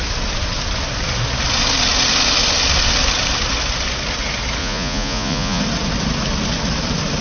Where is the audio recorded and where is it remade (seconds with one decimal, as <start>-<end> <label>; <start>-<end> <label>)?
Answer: 0.0-4.6 recorded; 4.6-5.6 remade; 5.6-7.2 recorded